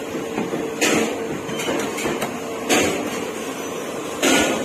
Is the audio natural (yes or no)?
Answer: yes